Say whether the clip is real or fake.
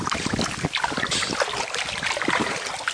real